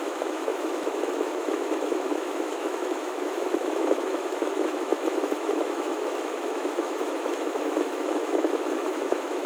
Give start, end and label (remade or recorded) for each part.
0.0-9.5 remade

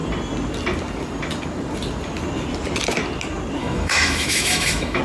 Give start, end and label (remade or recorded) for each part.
0.0-3.6 recorded; 3.6-5.0 remade

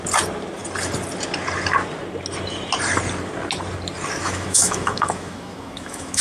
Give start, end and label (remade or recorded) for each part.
0.0-4.2 recorded; 4.2-6.2 remade

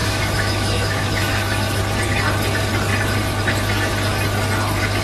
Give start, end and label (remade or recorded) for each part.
0.0-1.8 remade; 1.8-5.0 recorded

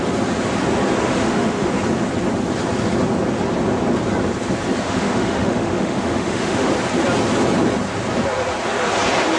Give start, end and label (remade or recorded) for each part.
0.0-1.0 recorded; 1.0-1.7 remade; 1.7-4.8 recorded; 4.8-6.7 remade; 6.7-9.4 recorded

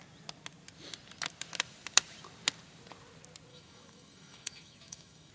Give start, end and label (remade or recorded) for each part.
0.0-3.5 recorded; 3.5-5.3 remade

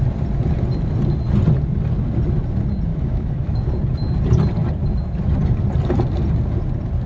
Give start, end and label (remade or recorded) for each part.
0.0-2.9 recorded; 2.9-3.7 remade; 3.7-7.1 recorded

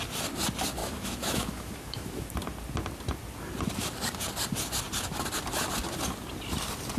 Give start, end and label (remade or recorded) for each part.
0.0-0.8 recorded; 0.8-2.3 remade; 2.3-7.0 recorded